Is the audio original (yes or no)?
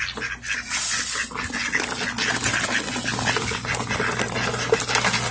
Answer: yes